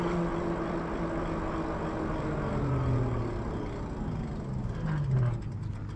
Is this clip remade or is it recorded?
recorded